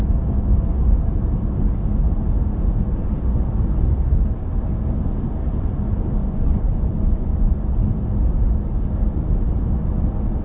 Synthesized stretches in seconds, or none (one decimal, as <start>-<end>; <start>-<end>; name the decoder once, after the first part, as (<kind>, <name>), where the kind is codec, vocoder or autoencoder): 6.2-7.6 (vocoder, Vocos)